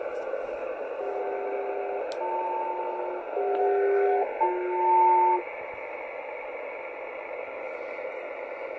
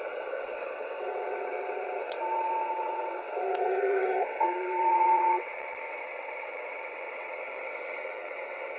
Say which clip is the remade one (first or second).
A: second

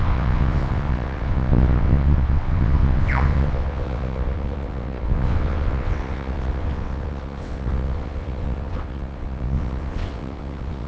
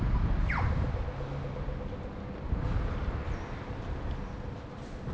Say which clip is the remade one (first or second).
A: first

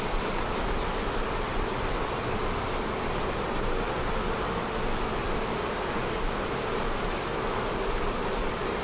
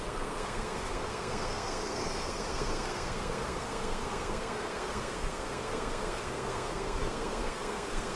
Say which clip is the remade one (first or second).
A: second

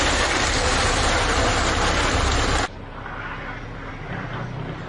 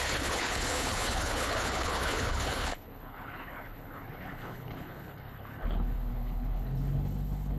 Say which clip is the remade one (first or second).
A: second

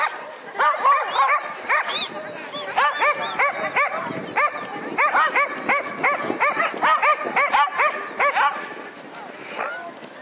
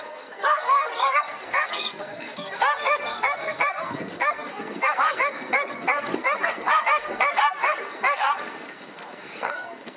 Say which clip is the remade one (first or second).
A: second